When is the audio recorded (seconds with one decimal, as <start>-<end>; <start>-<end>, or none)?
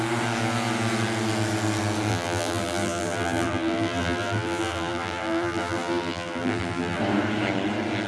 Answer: 0.0-2.1; 7.0-8.1